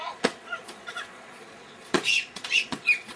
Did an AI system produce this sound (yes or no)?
yes